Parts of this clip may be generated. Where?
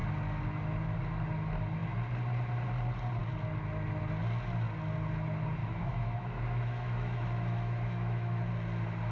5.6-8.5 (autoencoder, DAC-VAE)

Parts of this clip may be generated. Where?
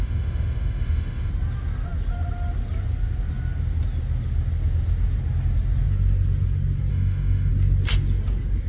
0.0-1.3 (autoencoder, DAC-VAE); 6.9-7.5